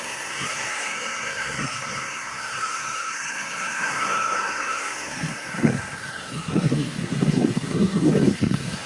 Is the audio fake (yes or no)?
yes